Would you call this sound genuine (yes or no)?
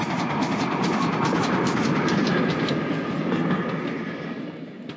yes